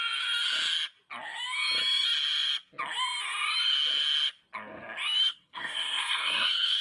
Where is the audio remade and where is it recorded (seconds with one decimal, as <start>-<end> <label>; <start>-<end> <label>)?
0.0-5.3 recorded; 5.3-6.8 remade